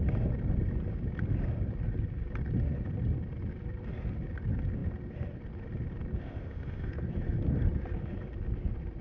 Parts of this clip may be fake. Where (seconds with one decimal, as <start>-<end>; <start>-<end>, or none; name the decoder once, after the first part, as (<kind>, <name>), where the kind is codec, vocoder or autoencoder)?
6.2-6.9 (codec, ZipCodec)